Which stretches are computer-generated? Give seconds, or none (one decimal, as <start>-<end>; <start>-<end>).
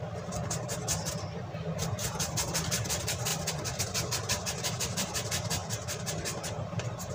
5.6-7.1